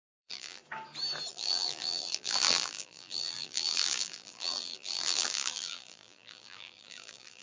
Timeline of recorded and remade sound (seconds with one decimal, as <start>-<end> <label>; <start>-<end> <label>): 0.0-0.6 remade; 0.6-1.3 recorded; 1.3-7.4 remade